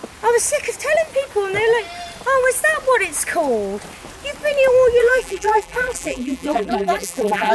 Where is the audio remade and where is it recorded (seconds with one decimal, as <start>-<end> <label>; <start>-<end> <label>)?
0.0-5.0 recorded; 5.0-7.5 remade